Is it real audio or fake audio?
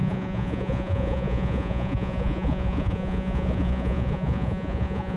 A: fake